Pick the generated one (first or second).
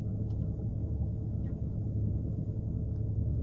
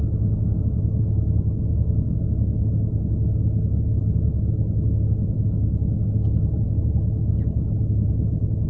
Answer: first